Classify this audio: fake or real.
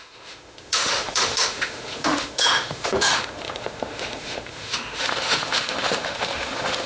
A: fake